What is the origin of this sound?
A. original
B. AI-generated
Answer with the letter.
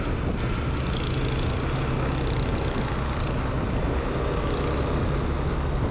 A